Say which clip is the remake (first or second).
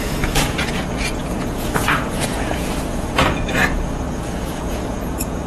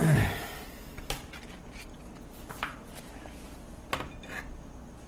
first